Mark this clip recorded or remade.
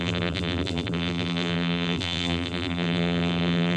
remade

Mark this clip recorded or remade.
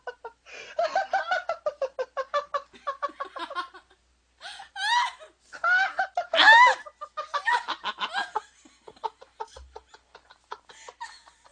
recorded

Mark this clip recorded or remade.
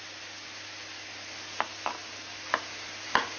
recorded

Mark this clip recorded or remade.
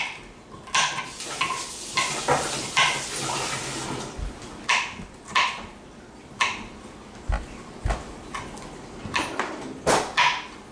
recorded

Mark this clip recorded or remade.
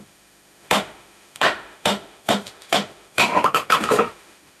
remade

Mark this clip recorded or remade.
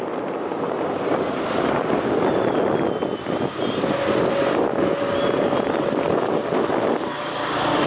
recorded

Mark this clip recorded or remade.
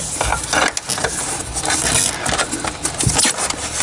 recorded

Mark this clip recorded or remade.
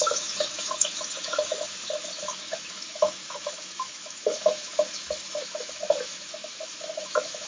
remade